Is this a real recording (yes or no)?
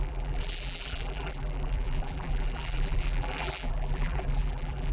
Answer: no